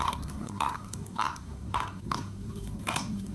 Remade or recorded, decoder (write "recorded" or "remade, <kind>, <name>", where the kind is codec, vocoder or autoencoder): remade, codec, SNAC